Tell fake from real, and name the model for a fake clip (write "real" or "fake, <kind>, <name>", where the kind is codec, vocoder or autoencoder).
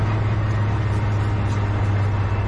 real